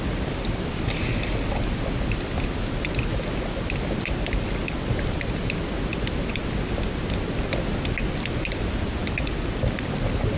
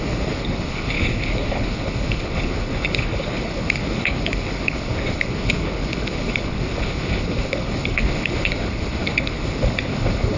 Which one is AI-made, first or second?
second